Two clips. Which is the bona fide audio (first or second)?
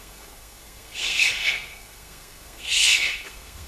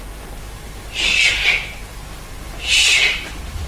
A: second